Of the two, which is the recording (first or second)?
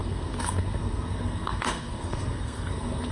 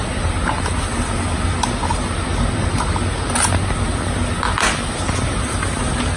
second